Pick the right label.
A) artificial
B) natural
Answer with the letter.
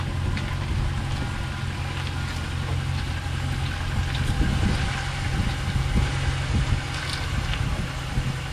B